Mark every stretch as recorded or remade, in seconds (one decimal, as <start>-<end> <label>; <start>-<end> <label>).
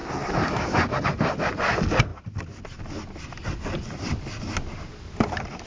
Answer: 0.0-5.7 recorded